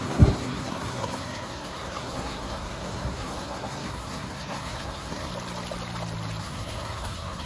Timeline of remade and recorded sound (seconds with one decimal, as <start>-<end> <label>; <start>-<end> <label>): 0.0-5.3 remade; 5.3-6.4 recorded; 6.4-7.5 remade